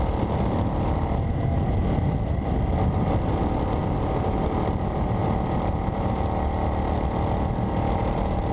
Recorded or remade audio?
recorded